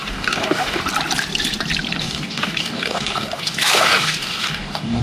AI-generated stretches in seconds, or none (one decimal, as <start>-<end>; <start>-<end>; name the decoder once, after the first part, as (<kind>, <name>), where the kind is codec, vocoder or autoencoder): 0.0-0.8 (codec, DAC); 2.0-5.0